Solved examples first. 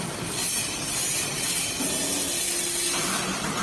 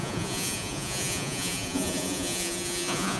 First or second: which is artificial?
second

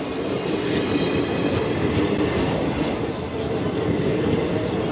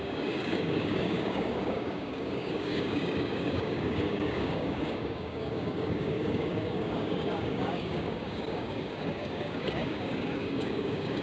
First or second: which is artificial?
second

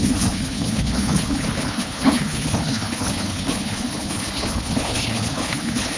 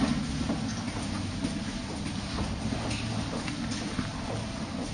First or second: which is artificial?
first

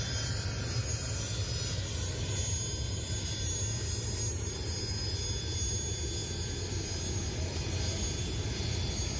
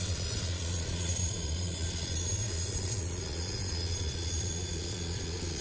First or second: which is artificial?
second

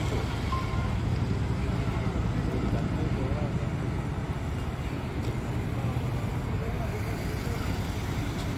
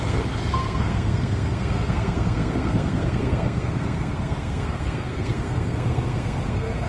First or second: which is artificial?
second